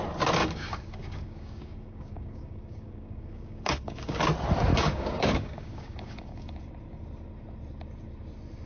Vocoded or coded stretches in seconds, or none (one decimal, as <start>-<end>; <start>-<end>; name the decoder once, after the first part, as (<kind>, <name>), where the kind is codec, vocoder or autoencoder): 0.4-4.2 (codec, DAC); 4.7-6.6